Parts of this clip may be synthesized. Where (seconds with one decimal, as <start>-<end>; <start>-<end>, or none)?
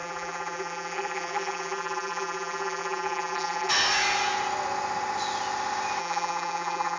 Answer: 0.0-3.7; 6.0-7.0